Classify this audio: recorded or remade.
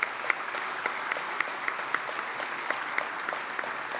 recorded